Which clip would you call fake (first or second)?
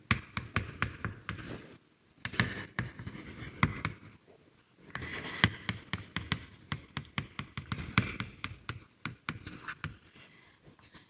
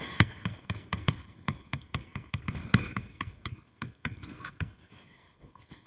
second